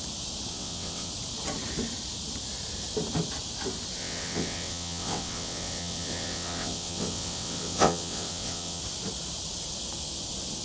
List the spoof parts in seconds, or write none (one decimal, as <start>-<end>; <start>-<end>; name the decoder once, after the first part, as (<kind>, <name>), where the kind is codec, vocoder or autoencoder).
0.5-1.1 (vocoder, WaveNeXt); 4.0-8.8